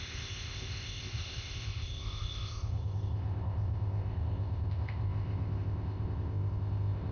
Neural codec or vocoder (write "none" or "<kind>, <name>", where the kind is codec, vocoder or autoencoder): codec, ZipCodec